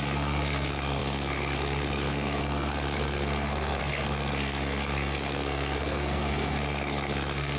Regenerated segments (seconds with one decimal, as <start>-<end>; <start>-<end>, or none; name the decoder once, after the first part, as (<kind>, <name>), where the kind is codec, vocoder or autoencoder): 0.0-7.6 (codec, SNAC)

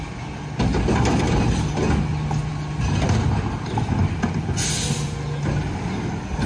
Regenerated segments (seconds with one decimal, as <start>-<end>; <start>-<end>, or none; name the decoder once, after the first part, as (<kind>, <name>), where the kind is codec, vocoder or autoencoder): none

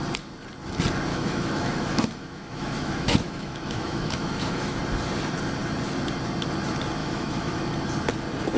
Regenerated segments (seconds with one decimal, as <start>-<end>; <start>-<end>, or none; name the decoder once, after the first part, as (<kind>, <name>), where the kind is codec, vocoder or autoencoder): 1.1-4.8 (autoencoder, DAC-VAE); 7.0-7.6

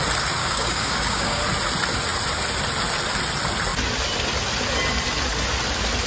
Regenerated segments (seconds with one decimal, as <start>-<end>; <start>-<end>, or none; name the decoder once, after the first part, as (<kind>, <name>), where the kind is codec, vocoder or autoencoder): 0.4-1.4 (codec, DAC)

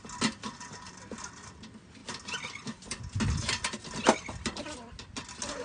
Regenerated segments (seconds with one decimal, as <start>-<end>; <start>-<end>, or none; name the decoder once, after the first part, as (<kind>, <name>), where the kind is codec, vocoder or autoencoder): none

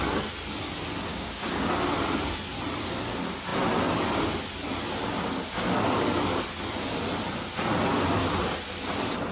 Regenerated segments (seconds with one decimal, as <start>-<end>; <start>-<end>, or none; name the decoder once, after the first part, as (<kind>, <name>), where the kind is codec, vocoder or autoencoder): 1.1-1.7 (codec, DAC)